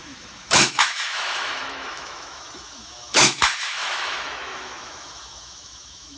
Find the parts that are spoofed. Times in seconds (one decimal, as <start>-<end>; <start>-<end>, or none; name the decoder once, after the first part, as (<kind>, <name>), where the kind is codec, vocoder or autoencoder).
0.0-6.2 (autoencoder, DAC-VAE)